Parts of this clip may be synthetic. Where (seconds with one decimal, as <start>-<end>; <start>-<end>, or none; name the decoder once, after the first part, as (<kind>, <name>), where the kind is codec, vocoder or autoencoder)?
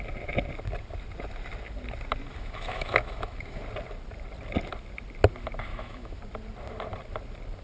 2.3-3.6 (autoencoder, DAC-VAE); 5.7-6.2